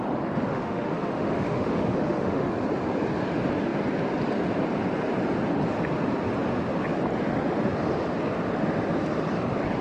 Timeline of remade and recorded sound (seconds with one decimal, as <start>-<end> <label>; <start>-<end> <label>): 0.0-0.5 recorded; 0.5-2.5 remade; 2.5-9.8 recorded